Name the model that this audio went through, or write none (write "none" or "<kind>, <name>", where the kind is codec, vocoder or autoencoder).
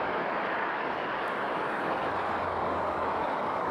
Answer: codec, DAC